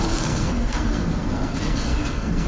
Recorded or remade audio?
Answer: remade